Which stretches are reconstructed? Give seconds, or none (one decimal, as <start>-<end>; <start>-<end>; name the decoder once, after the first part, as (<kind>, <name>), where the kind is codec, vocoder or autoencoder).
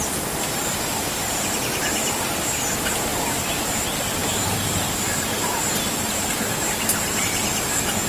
1.2-2.2 (vocoder, BigVGAN v2)